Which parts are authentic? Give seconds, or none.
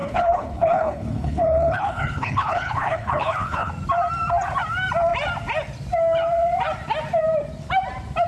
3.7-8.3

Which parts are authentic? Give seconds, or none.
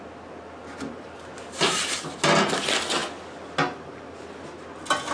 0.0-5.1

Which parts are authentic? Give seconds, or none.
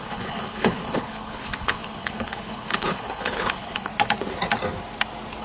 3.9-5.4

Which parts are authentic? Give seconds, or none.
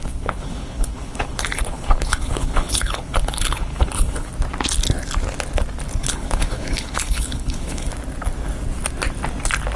4.3-6.0; 7.9-9.8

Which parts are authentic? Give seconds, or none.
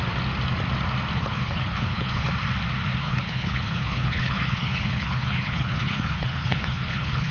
0.0-1.2; 2.3-3.0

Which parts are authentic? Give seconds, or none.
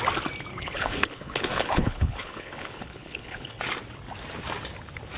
0.0-0.5; 3.6-5.2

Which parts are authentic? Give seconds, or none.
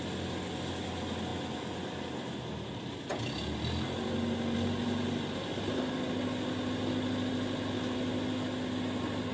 0.0-9.3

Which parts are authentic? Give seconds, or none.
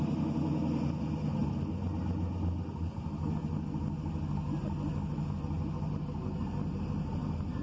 0.0-7.6